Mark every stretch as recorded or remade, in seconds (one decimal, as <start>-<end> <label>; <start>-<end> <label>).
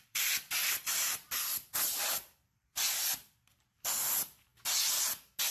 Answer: 0.0-4.5 remade; 4.5-5.5 recorded